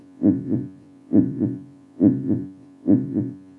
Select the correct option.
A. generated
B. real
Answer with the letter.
A